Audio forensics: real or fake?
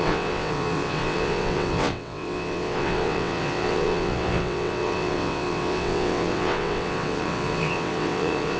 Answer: fake